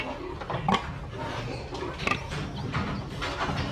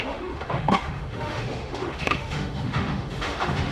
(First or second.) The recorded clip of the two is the first